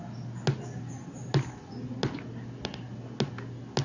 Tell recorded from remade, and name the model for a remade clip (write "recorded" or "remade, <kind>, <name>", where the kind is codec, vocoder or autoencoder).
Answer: recorded